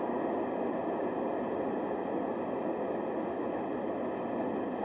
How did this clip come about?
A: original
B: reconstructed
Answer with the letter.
A